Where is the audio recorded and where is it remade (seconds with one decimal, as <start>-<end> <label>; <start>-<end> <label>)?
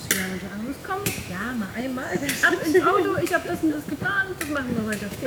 0.0-0.8 recorded; 0.8-4.0 remade; 4.0-4.7 recorded; 4.7-5.3 remade